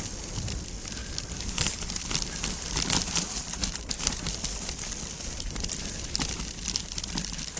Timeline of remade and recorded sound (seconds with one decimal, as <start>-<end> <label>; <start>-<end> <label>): 0.0-7.6 remade